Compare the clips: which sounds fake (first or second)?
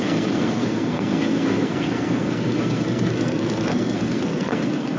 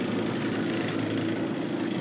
first